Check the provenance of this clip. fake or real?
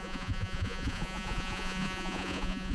fake